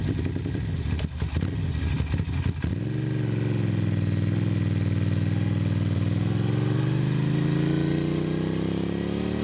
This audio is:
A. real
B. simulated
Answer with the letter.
A